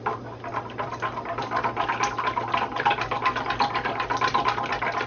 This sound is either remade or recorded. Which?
recorded